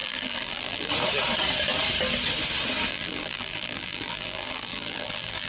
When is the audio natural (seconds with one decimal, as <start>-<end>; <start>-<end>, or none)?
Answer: 0.9-2.9